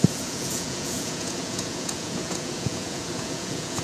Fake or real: fake